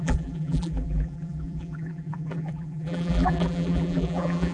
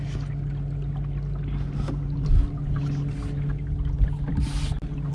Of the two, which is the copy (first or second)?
first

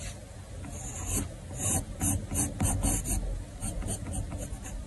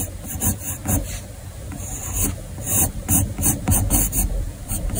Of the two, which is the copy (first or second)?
second